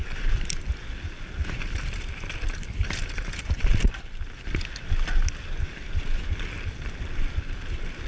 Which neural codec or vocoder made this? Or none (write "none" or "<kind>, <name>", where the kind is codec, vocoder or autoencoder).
none